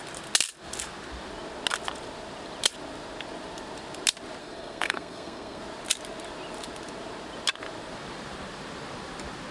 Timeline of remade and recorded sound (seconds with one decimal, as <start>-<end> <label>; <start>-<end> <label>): 0.0-4.4 recorded; 4.4-5.6 remade; 5.6-9.5 recorded